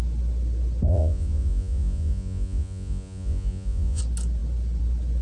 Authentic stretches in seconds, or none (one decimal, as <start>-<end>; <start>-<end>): 0.0-0.9; 4.0-5.2